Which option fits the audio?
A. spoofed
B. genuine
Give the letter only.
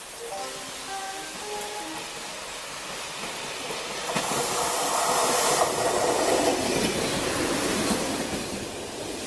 B